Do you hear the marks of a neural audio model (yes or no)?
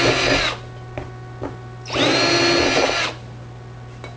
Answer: no